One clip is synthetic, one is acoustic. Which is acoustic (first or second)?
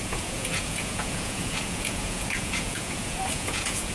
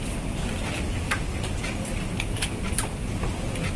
second